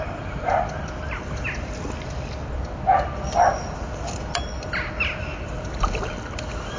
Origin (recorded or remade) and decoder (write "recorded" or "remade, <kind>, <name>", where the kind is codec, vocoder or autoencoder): recorded